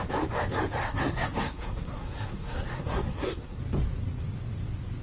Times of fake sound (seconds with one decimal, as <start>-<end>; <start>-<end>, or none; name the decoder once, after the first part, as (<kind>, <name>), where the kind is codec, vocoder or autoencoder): 0.8-3.6 (codec, SNAC)